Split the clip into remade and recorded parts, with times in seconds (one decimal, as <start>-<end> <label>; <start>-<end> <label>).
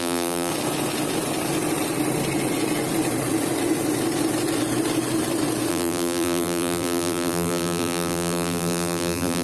0.0-0.5 remade; 0.5-5.7 recorded; 5.7-9.4 remade